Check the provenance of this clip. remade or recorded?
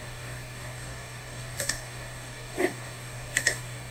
remade